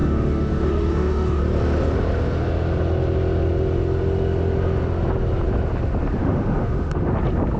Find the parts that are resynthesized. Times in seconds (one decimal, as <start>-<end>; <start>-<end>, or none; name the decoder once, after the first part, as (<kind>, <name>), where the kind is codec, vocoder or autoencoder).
0.0-1.4 (autoencoder, DAC-VAE); 6.2-7.1